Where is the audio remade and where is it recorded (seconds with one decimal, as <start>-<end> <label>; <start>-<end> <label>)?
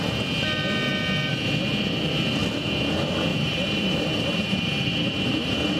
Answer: 0.0-3.3 recorded; 3.3-5.8 remade